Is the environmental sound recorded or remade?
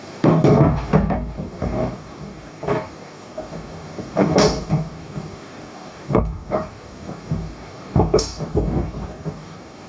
remade